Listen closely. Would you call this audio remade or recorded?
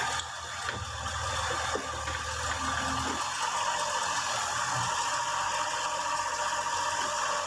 recorded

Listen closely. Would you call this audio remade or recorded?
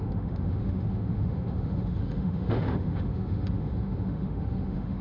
remade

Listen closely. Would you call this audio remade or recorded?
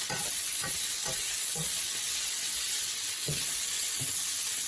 remade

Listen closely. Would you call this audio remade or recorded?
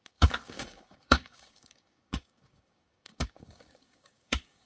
remade